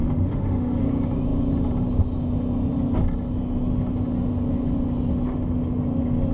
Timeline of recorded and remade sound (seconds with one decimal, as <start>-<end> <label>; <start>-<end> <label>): 0.0-0.8 remade; 0.8-6.3 recorded